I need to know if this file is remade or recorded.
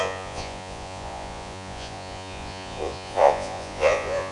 remade